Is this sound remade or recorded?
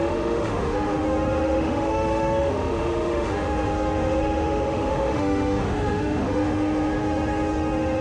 remade